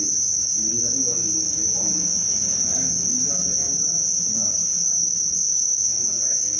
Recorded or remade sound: remade